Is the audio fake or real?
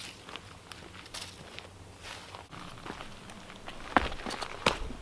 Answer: real